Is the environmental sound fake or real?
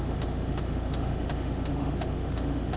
fake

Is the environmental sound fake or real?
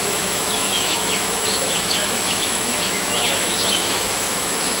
fake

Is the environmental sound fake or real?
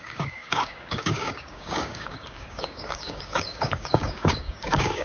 fake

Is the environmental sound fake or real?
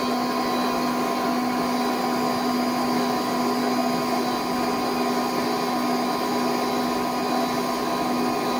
real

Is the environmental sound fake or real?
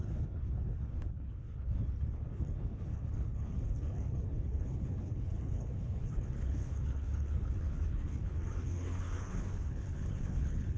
fake